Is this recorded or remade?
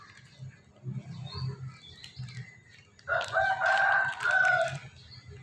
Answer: recorded